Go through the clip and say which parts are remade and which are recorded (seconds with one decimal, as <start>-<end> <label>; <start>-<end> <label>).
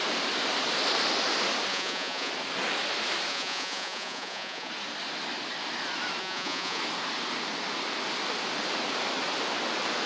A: 0.0-1.7 recorded; 1.7-2.3 remade; 2.3-3.3 recorded; 3.3-4.7 remade; 4.7-6.2 recorded; 6.2-6.8 remade; 6.8-10.1 recorded